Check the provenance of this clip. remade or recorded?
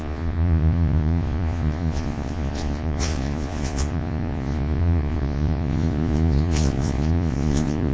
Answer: remade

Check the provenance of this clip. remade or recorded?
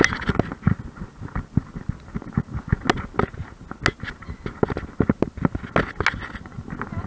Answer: recorded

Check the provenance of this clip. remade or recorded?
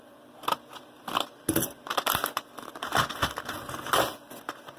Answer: recorded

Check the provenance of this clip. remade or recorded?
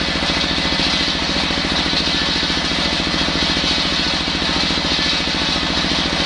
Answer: recorded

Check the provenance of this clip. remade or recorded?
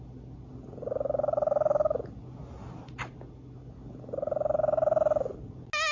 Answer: recorded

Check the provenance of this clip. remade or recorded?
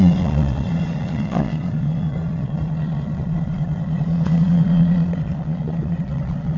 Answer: remade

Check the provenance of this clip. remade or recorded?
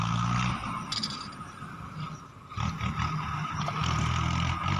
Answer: recorded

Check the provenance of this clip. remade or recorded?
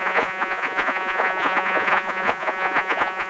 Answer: remade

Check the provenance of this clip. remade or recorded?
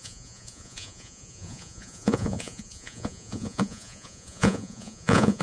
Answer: remade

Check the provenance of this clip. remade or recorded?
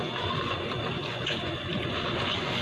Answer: remade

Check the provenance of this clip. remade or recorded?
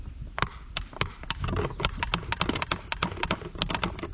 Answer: recorded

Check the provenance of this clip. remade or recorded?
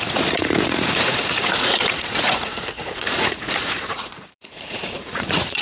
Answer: remade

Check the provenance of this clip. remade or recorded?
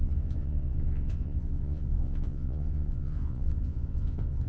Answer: remade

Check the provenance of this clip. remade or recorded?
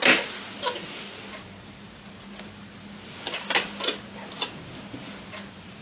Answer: recorded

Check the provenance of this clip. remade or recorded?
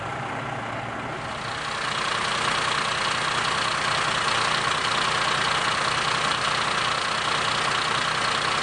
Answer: recorded